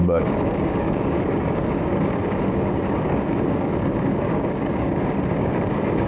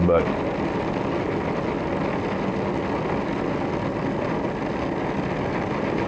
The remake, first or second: first